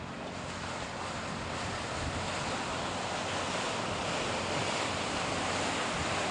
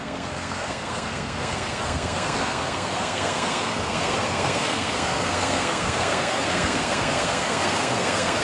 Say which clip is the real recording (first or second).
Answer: first